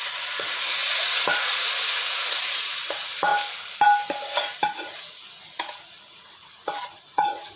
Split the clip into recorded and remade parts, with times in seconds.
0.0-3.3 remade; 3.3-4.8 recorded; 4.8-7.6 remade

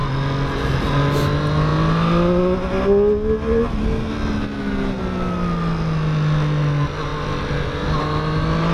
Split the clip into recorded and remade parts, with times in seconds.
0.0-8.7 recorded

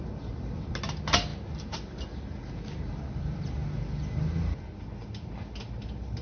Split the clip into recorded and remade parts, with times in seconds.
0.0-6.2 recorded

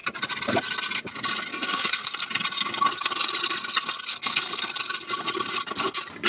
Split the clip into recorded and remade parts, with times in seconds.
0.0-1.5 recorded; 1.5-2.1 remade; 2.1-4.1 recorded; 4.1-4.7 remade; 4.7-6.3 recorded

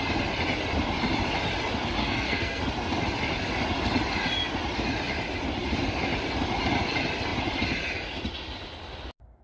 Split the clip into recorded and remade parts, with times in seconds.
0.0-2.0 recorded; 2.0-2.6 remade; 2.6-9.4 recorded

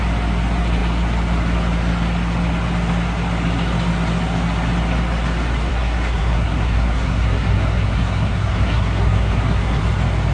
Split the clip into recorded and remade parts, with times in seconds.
0.0-5.7 recorded; 5.7-9.8 remade; 9.8-10.3 recorded